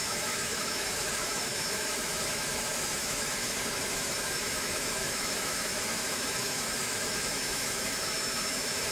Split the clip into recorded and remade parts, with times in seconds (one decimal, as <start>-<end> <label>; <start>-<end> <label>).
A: 0.0-8.9 remade